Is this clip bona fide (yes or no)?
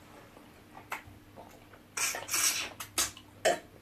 yes